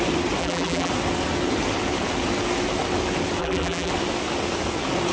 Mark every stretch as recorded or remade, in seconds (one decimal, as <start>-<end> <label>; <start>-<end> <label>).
0.0-0.4 recorded; 0.4-0.9 remade; 0.9-3.4 recorded; 3.4-3.9 remade; 3.9-5.1 recorded